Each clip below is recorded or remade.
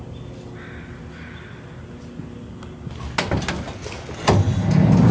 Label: recorded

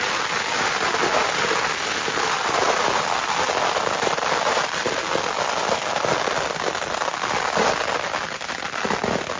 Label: recorded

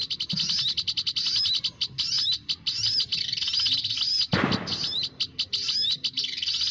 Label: recorded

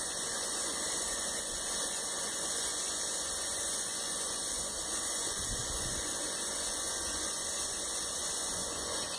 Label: remade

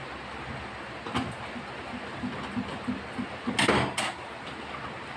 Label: recorded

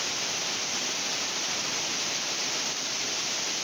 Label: recorded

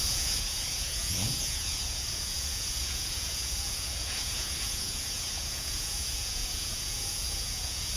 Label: remade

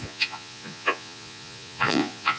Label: remade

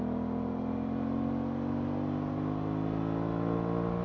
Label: recorded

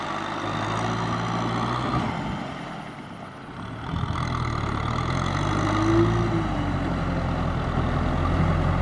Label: recorded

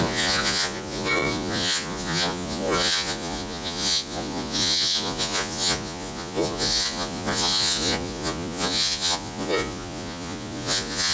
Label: remade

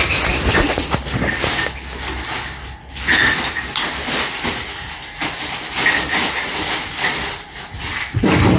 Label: recorded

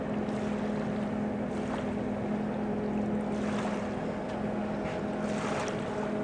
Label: recorded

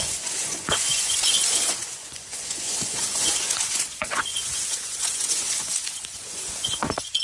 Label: remade